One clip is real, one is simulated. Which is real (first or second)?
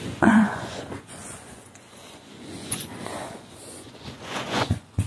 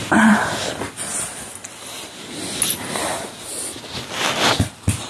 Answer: second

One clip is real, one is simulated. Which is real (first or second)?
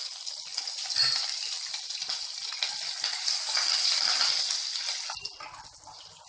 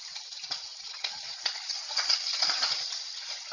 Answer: first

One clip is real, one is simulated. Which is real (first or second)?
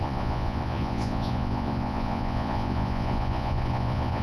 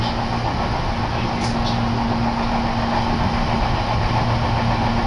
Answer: second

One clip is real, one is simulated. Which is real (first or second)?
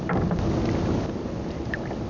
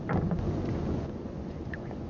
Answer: first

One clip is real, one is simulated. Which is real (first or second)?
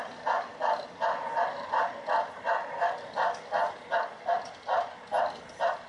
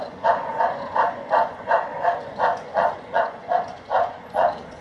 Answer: first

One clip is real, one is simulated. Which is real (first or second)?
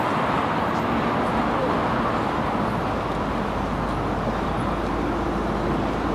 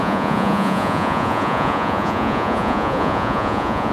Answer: first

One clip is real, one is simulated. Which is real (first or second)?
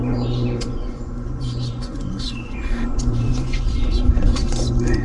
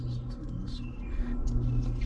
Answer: second